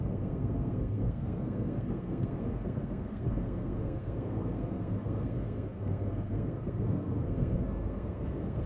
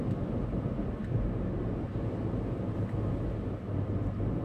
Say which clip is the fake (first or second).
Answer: first